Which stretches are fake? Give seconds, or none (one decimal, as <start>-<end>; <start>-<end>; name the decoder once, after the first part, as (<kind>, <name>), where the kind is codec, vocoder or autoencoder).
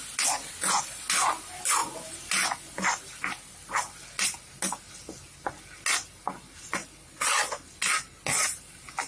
none